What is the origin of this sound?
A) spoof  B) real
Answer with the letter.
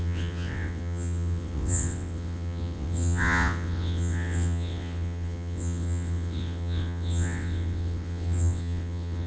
A